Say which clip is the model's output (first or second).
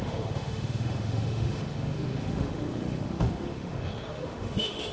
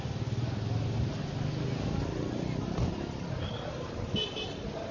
first